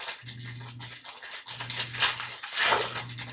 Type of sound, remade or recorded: recorded